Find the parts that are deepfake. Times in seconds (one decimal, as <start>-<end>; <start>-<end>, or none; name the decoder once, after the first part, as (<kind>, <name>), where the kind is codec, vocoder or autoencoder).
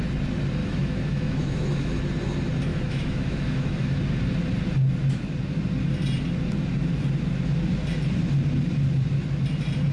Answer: 0.6-2.0 (autoencoder, DAC-VAE); 2.7-4.0